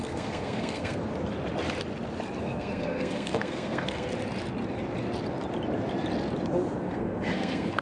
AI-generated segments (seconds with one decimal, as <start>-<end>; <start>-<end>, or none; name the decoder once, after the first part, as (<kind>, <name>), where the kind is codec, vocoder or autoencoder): 0.0-1.0 (codec, SNAC); 2.4-4.1; 6.8-7.8